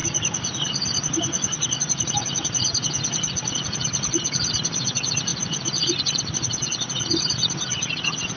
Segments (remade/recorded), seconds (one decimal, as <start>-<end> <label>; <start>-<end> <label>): 0.0-8.4 recorded